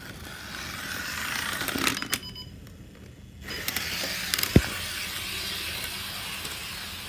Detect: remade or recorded recorded